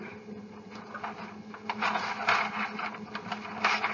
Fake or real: real